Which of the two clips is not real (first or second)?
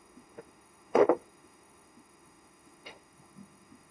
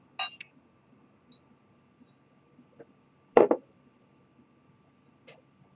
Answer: first